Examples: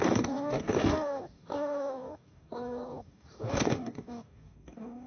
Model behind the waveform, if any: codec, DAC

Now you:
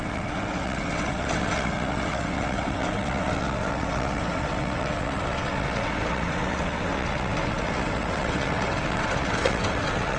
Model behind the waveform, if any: vocoder, WaveNeXt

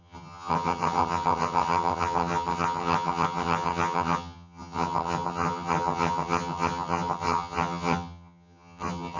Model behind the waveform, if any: vocoder, HiFi-GAN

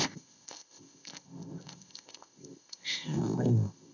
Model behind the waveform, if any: codec, ZipCodec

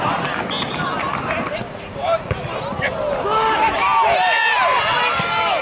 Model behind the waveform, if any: none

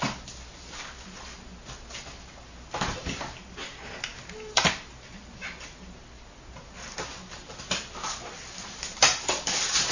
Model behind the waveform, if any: none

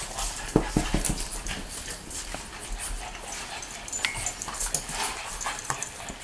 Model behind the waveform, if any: none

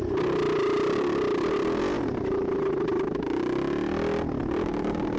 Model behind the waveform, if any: none